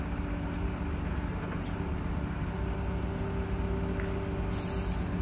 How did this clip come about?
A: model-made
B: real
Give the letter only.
B